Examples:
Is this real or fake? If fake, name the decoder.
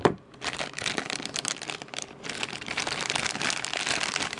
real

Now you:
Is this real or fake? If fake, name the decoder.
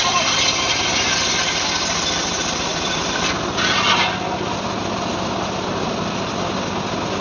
real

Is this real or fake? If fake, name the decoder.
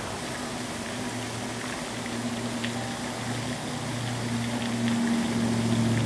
real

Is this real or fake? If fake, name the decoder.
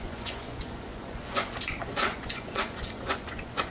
fake, vocoder, Vocos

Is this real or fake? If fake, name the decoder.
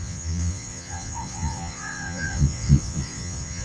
fake, vocoder, Vocos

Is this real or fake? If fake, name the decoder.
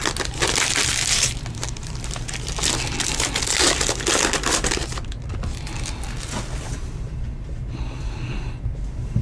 real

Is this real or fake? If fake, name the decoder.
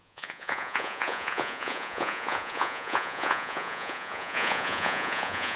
fake, vocoder, Vocos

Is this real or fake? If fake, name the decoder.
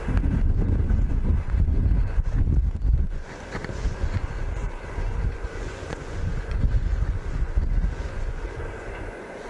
fake, vocoder, Vocos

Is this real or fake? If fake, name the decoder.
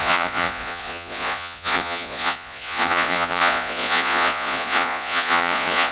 fake, vocoder, Vocos